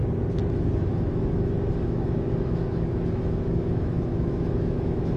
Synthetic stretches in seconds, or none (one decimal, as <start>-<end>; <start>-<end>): 0.5-5.2